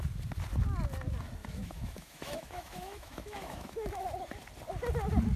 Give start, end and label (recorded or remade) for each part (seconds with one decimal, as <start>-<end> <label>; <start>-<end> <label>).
0.0-1.4 recorded; 1.4-4.0 remade; 4.0-5.4 recorded